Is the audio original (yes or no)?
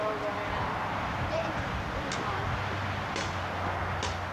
yes